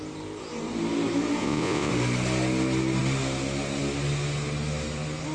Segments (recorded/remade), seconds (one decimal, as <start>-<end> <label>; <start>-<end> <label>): 0.0-1.4 recorded; 1.4-1.9 remade; 1.9-5.3 recorded